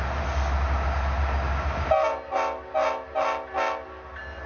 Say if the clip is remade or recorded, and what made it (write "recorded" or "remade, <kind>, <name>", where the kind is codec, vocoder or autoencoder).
recorded